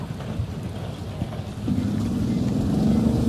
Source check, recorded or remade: recorded